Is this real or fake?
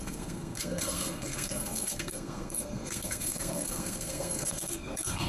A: fake